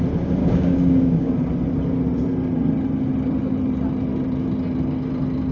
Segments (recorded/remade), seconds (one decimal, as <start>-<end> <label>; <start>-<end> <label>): 0.0-0.4 recorded; 0.4-1.3 remade; 1.3-5.5 recorded